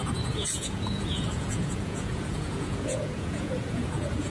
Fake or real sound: fake